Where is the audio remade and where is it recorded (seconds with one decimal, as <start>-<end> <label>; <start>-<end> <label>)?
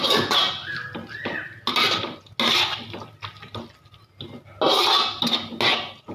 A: 0.0-6.1 recorded